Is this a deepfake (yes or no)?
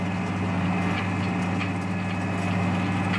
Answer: no